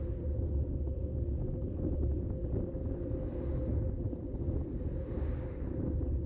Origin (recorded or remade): recorded